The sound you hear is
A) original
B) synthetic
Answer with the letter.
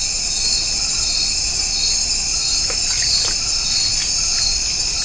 A